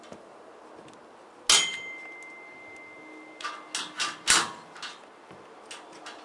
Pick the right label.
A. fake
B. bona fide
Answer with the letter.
B